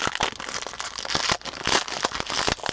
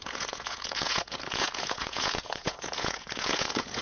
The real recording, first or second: first